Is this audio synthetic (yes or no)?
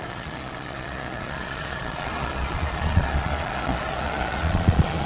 yes